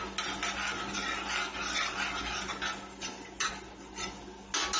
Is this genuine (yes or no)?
yes